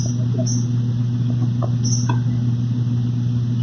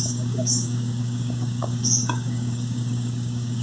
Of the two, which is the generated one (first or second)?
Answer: second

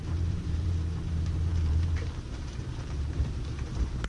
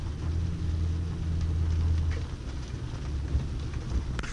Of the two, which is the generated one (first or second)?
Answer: first